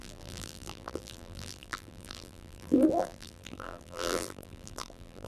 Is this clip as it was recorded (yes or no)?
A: no